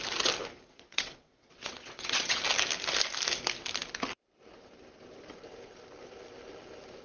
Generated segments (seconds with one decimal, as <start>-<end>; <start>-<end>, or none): 0.7-2.4

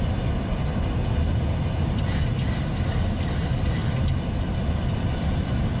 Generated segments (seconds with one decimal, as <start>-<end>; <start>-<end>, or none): none

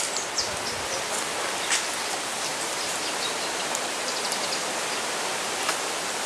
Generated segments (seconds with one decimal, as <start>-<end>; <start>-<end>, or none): 2.5-4.3

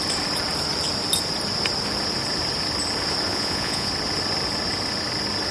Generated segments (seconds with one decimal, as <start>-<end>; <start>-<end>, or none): 3.3-3.9

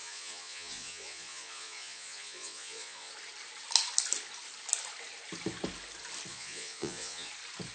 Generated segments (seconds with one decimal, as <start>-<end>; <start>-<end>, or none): 0.0-3.1; 6.3-7.3

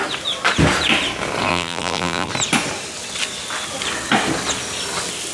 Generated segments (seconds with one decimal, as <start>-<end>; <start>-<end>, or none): 1.5-2.3

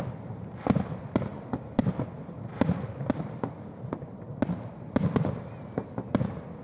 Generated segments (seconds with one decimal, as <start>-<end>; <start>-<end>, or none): none

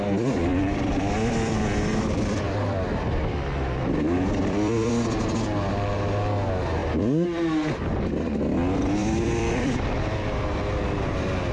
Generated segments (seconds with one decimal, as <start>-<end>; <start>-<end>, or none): 0.5-4.9; 9.0-10.4